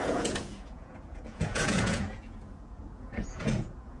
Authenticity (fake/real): fake